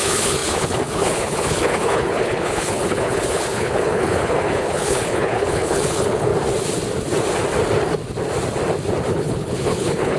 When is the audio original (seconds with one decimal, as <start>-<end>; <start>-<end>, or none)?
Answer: 6.3-9.1